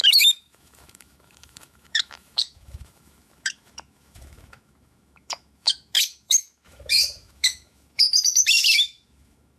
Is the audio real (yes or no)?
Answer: no